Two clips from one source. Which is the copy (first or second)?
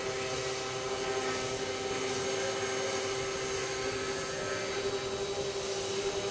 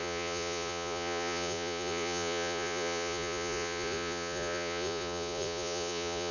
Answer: second